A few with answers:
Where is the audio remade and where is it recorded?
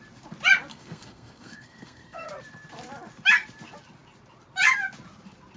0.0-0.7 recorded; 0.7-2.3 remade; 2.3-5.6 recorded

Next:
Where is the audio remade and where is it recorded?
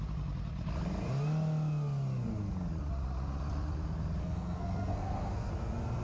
0.0-4.2 recorded; 4.2-5.5 remade; 5.5-6.0 recorded